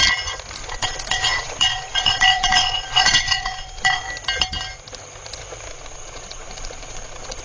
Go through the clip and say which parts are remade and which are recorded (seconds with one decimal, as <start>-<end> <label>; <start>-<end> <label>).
0.0-0.6 recorded; 0.6-4.0 remade; 4.0-5.7 recorded; 5.7-7.4 remade